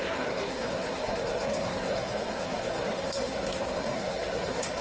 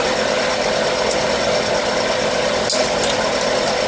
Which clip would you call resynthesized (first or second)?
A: first